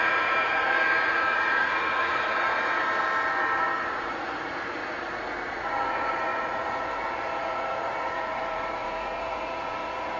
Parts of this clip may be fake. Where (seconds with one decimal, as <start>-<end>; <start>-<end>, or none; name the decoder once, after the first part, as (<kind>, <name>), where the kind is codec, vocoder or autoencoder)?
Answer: 0.0-2.5 (vocoder, Vocos); 3.9-4.8; 5.6-10.2